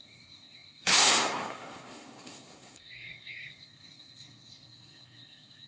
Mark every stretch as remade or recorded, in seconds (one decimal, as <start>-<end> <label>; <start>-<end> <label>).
0.0-5.7 remade